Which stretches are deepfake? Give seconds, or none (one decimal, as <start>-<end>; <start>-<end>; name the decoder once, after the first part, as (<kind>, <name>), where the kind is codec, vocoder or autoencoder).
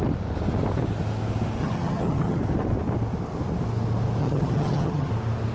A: 1.6-2.4 (vocoder, HiFi-GAN); 4.2-5.1